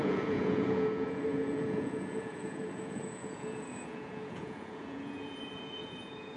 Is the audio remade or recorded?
remade